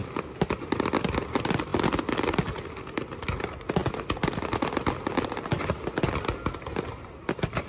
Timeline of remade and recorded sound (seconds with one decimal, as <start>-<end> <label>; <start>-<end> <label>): 0.0-7.7 recorded